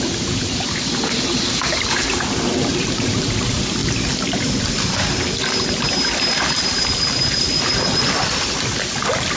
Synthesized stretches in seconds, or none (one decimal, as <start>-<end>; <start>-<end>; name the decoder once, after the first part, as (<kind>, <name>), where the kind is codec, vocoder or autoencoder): none